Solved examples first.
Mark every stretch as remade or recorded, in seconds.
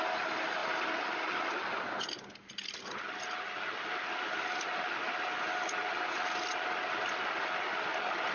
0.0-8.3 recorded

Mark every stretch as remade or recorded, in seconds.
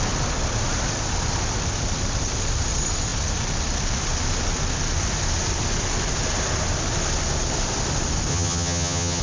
0.0-8.3 recorded; 8.3-9.2 remade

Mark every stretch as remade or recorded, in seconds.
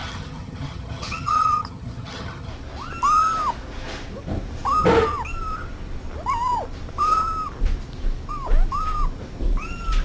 0.0-2.5 remade; 2.5-10.0 recorded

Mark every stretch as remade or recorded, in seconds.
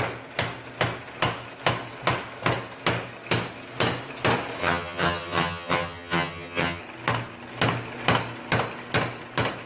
0.0-4.6 recorded; 4.6-6.8 remade; 6.8-9.7 recorded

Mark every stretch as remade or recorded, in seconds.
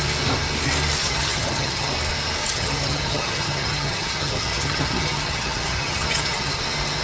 0.0-1.0 recorded; 1.0-1.9 remade; 1.9-2.4 recorded; 2.4-6.6 remade; 6.6-7.0 recorded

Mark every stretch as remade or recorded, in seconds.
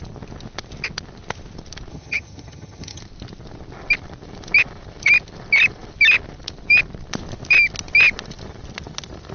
0.0-1.9 recorded; 1.9-3.0 remade; 3.0-9.3 recorded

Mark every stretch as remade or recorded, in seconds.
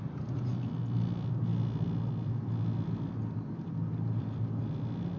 0.0-5.2 recorded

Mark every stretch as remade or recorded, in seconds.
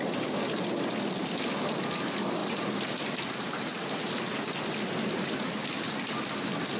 0.0-6.8 recorded